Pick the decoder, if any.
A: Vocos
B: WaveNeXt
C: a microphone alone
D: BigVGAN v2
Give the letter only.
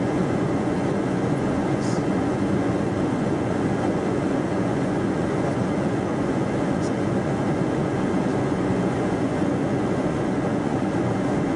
A